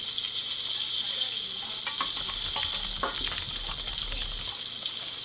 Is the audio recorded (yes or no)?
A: yes